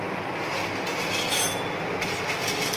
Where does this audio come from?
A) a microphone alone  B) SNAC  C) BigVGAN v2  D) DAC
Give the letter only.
A